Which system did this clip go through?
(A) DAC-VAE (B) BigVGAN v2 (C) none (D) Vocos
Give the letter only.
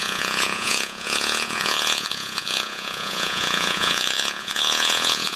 D